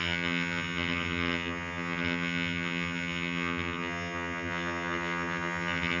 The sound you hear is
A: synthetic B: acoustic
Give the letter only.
A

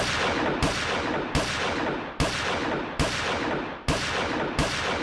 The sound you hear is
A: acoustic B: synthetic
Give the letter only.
A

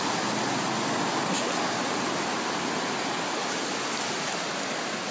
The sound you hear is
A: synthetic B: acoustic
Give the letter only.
B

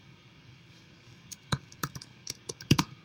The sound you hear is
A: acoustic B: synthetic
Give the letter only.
B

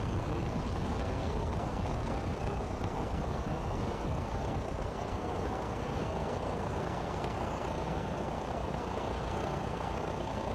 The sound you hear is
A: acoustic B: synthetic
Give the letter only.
B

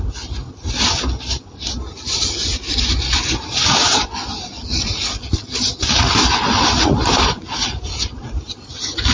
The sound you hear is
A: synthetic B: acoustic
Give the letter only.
B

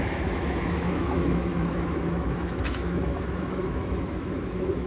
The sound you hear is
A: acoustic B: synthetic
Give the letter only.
B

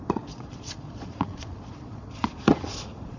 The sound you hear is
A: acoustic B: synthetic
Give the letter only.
B